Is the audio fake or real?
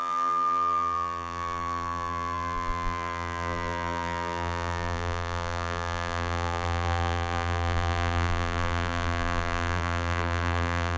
fake